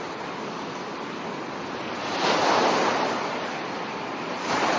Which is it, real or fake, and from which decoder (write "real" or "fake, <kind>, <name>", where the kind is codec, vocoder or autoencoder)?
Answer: real